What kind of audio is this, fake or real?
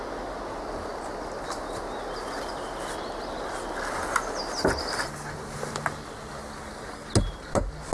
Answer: real